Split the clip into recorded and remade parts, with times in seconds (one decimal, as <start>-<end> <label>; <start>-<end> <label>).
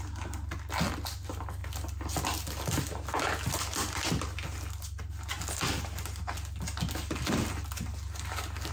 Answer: 0.0-8.7 recorded